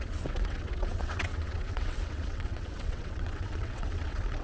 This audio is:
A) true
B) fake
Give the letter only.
B